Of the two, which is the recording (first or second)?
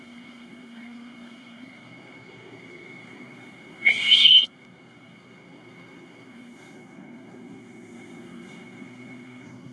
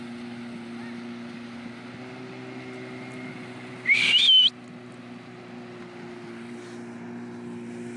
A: second